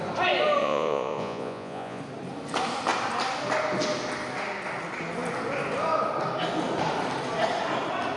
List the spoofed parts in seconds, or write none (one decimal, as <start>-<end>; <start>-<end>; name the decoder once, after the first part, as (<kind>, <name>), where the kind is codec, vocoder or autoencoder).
0.6-2.0 (vocoder, Vocos)